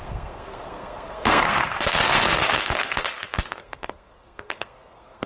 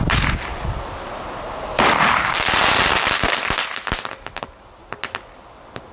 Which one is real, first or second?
second